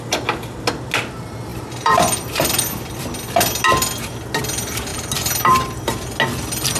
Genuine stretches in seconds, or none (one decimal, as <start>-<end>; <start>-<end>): 0.0-1.5; 2.6-4.9; 5.9-6.8